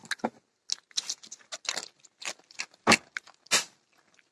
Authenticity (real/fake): real